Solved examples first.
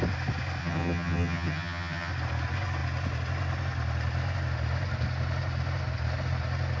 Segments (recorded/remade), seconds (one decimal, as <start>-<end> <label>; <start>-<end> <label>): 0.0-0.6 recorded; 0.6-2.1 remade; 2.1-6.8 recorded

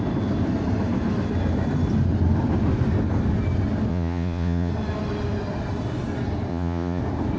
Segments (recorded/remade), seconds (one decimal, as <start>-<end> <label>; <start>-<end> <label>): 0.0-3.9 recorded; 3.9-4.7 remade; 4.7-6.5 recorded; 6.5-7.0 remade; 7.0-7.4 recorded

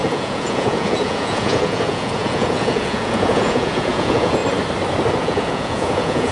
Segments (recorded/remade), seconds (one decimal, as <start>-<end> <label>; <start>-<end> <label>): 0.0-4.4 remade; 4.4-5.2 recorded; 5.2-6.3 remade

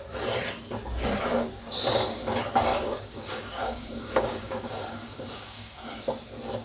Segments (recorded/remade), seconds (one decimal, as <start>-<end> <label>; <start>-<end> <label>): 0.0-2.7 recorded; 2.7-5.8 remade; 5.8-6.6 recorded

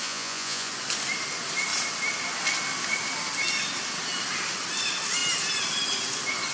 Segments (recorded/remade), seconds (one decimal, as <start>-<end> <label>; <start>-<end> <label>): 0.0-0.7 remade; 0.7-6.5 recorded

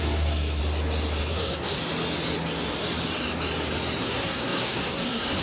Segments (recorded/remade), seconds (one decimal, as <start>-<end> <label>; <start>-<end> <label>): 0.0-0.6 remade; 0.6-1.3 recorded; 1.3-1.8 remade; 1.8-4.0 recorded; 4.0-5.4 remade

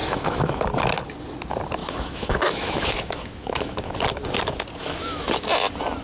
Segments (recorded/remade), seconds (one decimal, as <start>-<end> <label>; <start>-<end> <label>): 0.0-0.6 remade; 0.6-1.8 recorded; 1.8-3.9 remade; 3.9-4.8 recorded; 4.8-5.5 remade; 5.5-6.0 recorded